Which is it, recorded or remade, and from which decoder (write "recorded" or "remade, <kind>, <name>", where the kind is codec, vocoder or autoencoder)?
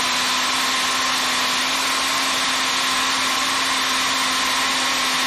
recorded